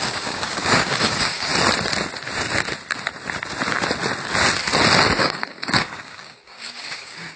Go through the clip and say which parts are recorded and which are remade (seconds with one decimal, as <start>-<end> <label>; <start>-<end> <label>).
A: 0.0-1.5 remade; 1.5-5.2 recorded; 5.2-7.4 remade